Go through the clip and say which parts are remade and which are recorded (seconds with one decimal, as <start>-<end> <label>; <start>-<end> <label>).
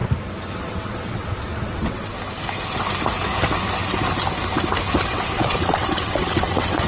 0.0-0.5 recorded; 0.5-2.1 remade; 2.1-5.1 recorded; 5.1-6.9 remade